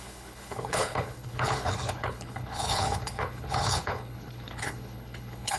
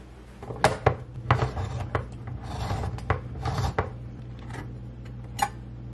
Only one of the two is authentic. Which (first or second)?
second